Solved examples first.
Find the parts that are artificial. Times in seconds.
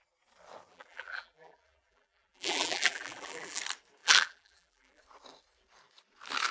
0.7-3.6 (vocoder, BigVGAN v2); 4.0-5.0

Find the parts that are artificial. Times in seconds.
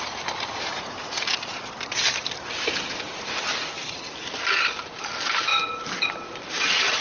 0.0-7.0 (vocoder, BigVGAN v2)